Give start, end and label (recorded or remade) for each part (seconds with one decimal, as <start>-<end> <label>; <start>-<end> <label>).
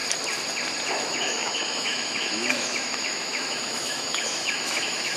0.0-0.9 recorded; 0.9-5.2 remade